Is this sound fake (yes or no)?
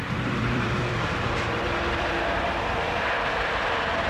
yes